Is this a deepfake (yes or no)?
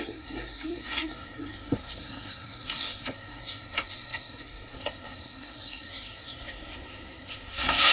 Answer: yes